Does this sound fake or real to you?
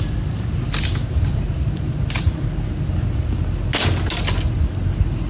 real